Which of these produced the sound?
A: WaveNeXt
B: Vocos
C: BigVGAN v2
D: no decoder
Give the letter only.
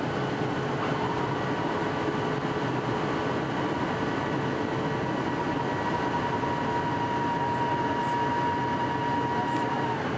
D